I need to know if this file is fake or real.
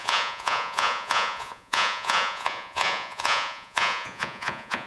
fake